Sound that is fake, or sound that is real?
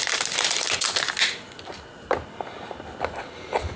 real